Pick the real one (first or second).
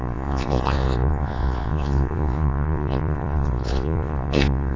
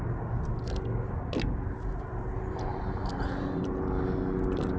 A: second